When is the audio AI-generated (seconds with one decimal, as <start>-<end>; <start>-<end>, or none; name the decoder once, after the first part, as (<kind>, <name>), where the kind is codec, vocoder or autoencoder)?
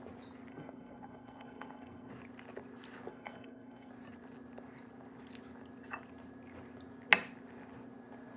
0.5-2.1 (codec, SNAC); 3.1-3.9